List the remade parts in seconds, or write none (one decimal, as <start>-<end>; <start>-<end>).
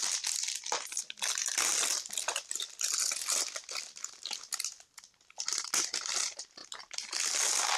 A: none